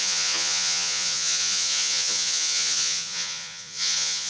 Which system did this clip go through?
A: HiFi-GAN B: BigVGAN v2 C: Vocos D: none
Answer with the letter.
C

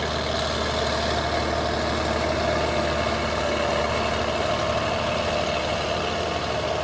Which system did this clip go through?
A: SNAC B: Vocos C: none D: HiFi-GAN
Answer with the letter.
C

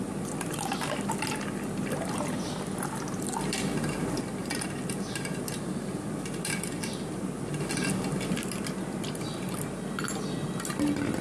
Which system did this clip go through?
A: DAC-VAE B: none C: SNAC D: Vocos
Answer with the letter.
B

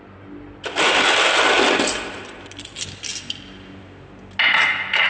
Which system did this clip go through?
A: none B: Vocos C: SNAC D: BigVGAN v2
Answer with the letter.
A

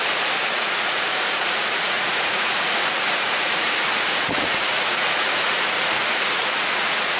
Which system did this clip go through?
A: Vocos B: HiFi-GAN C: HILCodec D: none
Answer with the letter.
A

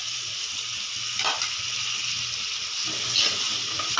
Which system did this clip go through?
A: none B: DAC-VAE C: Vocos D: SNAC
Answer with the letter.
A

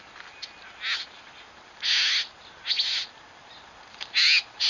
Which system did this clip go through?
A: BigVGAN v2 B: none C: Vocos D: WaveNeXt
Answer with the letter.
B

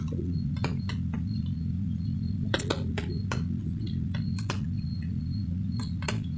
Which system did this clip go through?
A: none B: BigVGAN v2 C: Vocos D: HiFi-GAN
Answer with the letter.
C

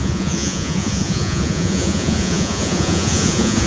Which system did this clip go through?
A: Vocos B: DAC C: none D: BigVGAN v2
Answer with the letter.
A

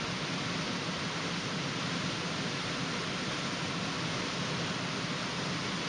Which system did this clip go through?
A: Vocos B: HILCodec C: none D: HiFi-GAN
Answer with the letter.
C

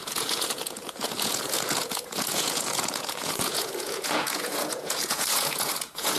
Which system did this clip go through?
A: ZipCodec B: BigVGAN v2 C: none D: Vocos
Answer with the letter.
D